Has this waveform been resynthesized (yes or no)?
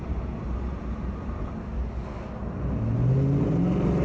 no